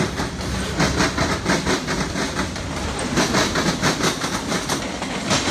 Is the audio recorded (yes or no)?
yes